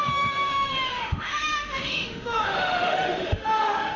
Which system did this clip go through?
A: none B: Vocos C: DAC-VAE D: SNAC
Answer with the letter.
C